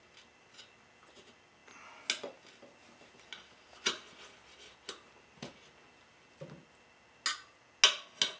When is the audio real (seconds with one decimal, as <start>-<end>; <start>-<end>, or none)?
0.0-8.4